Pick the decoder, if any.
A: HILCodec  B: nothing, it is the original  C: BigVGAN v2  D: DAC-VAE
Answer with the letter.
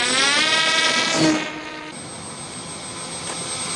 B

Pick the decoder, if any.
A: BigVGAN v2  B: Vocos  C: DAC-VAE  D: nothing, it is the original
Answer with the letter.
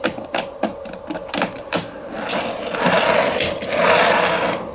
D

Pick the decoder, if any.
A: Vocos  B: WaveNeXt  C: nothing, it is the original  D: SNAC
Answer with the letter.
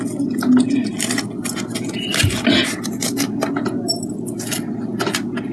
C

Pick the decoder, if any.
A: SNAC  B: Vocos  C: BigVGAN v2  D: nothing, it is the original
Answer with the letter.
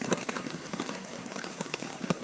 A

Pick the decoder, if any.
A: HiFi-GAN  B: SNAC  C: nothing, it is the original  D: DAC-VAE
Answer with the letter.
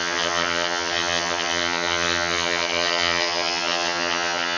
A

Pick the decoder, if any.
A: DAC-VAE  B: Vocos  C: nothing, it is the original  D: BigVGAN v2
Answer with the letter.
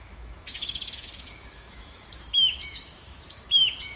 A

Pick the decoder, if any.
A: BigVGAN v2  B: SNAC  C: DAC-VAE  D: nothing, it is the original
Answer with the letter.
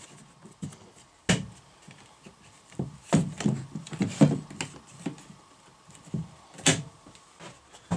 D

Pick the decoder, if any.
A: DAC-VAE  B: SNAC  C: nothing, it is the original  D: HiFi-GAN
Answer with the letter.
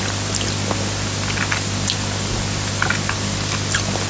C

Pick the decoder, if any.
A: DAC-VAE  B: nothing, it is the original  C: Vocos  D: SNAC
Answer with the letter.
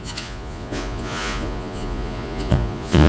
C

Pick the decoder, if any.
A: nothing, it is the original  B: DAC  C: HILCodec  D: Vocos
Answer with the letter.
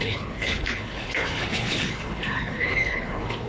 C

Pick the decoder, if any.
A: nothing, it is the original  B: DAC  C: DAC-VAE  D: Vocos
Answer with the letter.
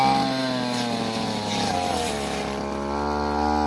A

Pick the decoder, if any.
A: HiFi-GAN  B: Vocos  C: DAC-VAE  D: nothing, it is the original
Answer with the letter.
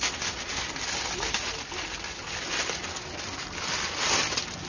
D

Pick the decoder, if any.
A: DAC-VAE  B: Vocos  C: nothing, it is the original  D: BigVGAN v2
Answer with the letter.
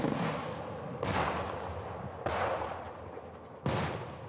C